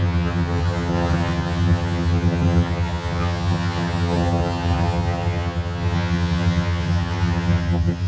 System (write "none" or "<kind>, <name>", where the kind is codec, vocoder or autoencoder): vocoder, HiFi-GAN